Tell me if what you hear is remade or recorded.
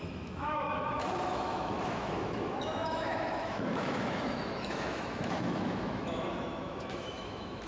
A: remade